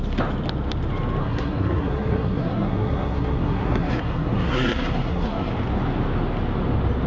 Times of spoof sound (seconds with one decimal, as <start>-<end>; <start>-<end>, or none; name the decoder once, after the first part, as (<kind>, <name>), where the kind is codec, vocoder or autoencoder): 1.2-5.5 (codec, SNAC)